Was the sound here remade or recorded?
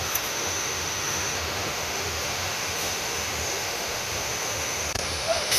remade